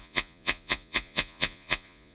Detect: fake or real fake